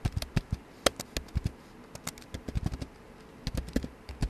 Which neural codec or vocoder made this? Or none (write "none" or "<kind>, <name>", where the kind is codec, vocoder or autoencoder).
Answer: none